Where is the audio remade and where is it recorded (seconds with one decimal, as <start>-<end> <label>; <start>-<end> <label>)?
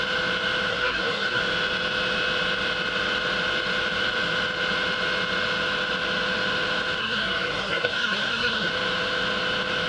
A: 0.0-0.7 recorded; 0.7-1.4 remade; 1.4-7.0 recorded; 7.0-8.7 remade; 8.7-9.9 recorded